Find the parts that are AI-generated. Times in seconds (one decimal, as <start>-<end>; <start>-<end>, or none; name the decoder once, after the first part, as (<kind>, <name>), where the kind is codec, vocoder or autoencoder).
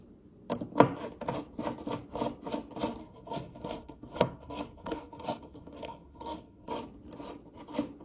3.0-6.7 (codec, SNAC)